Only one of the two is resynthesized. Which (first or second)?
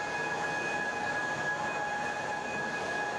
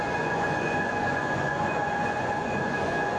second